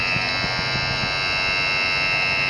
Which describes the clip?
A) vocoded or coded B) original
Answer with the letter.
B